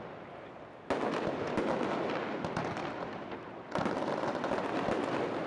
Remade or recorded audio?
recorded